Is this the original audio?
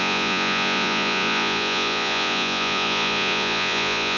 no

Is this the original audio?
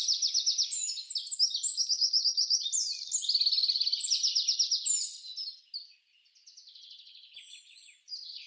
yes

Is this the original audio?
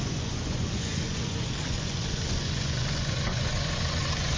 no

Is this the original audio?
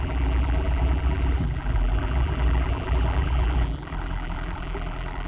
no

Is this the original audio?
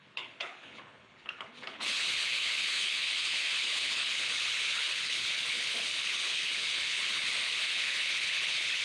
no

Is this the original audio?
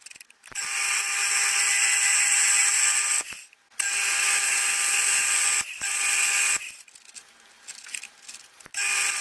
yes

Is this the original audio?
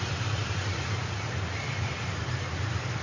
yes